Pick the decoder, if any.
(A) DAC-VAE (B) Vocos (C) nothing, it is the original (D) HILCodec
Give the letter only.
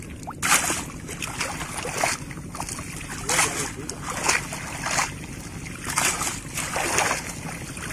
C